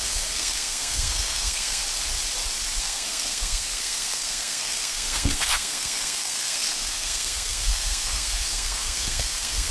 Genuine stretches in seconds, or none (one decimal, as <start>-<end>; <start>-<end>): 1.8-2.8